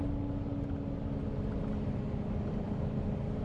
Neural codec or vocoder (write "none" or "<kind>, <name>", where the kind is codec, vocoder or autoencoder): none